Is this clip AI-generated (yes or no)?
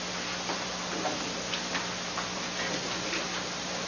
no